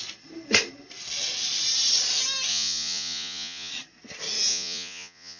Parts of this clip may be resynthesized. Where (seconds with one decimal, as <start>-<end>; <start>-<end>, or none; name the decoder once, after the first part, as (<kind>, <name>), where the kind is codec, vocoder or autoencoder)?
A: 2.5-3.7 (vocoder, Vocos); 4.5-5.4